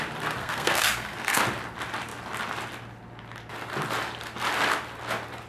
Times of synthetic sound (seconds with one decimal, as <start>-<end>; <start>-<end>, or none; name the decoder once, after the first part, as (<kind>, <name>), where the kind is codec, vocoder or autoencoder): 0.4-1.4 (codec, SNAC)